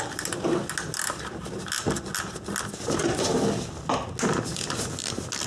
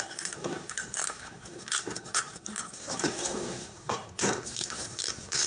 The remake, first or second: second